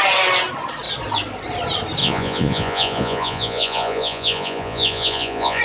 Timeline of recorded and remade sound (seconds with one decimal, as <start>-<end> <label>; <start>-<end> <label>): 0.0-2.0 recorded; 2.0-5.6 remade